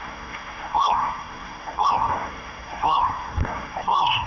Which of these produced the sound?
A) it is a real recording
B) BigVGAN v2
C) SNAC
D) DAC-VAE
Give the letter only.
C